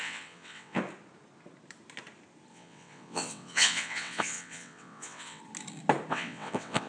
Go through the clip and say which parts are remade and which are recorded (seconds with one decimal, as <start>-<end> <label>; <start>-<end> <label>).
0.0-0.8 remade; 0.8-2.5 recorded; 2.5-5.4 remade; 5.4-6.1 recorded; 6.1-6.9 remade